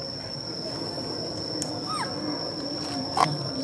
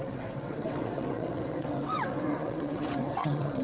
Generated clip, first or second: second